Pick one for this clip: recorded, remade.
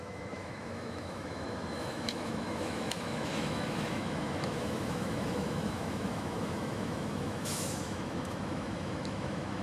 remade